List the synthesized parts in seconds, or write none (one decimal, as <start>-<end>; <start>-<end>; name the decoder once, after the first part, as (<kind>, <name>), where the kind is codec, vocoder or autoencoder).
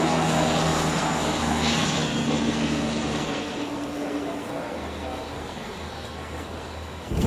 0.0-7.3 (codec, SNAC)